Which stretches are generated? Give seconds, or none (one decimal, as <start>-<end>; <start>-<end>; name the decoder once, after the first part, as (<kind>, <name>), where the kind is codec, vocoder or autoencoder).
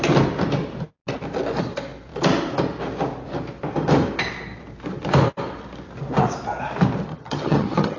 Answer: 7.1-8.0 (vocoder, HiFi-GAN)